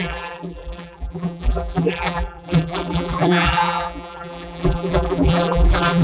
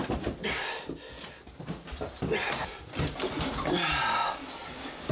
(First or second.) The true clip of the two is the second